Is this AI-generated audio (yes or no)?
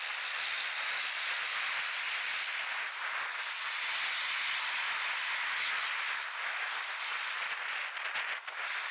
no